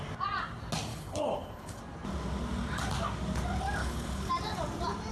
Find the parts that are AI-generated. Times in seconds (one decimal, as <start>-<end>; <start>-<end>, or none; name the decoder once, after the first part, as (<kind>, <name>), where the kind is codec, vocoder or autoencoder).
0.9-1.8 (codec, HILCodec); 3.8-4.3